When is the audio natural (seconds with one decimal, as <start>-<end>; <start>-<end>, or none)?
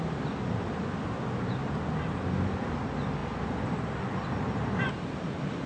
0.0-5.7